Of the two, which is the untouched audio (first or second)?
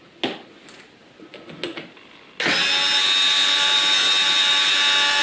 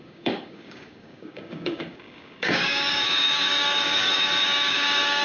first